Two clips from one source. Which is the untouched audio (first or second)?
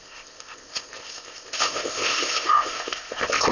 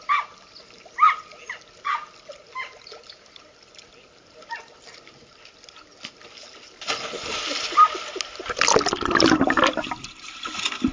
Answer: second